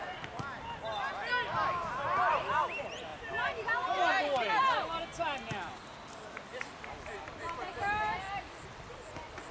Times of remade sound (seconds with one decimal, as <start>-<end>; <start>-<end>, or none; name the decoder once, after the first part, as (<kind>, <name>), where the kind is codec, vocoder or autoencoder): none